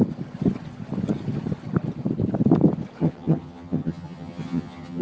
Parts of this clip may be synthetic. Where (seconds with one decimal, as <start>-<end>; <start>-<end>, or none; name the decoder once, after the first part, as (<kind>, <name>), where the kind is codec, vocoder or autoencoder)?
3.0-5.0 (vocoder, HiFi-GAN)